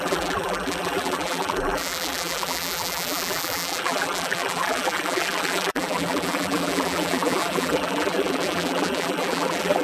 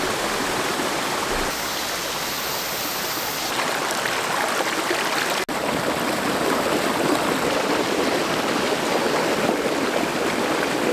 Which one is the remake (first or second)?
first